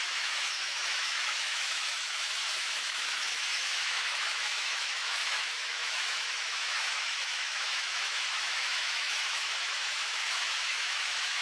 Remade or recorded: remade